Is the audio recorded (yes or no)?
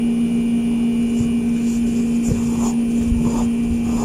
yes